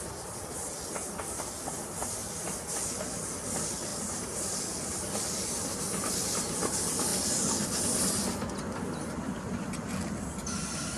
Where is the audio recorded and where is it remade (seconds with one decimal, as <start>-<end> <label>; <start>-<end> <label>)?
0.0-11.0 recorded